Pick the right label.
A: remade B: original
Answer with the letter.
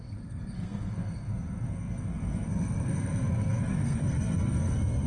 A